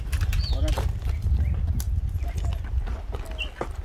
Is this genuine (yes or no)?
yes